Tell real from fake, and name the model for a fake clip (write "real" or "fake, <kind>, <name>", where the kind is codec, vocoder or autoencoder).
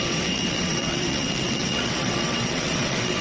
fake, vocoder, WaveNeXt